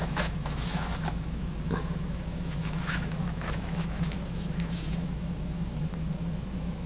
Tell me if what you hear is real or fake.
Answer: fake